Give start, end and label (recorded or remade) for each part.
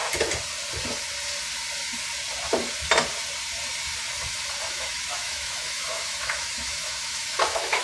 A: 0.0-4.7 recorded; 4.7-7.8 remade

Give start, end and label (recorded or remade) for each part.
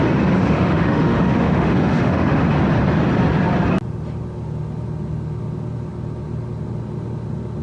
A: 0.0-0.4 recorded; 0.4-2.4 remade; 2.4-7.6 recorded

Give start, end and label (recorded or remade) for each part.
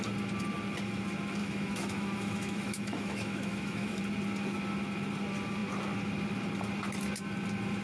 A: 0.0-1.4 recorded; 1.4-4.0 remade; 4.0-7.8 recorded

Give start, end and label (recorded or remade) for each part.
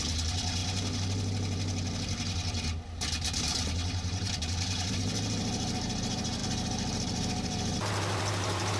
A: 0.0-8.8 remade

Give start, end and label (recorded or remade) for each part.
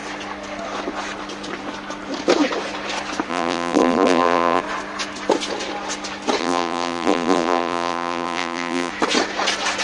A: 0.0-3.3 recorded; 3.3-4.6 remade; 4.6-6.4 recorded; 6.4-8.9 remade; 8.9-9.8 recorded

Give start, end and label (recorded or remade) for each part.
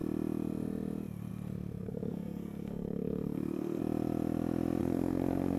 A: 0.0-1.8 recorded; 1.8-3.8 remade; 3.8-4.8 recorded; 4.8-5.6 remade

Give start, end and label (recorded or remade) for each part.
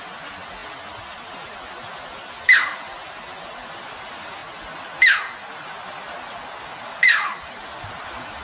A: 0.0-4.4 remade; 4.4-7.4 recorded; 7.4-8.4 remade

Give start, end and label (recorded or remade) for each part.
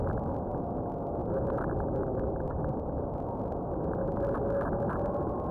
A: 0.0-5.5 recorded